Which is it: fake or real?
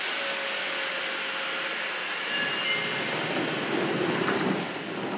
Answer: real